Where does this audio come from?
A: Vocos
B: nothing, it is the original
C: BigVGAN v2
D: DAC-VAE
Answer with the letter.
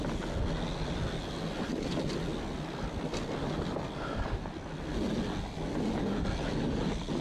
B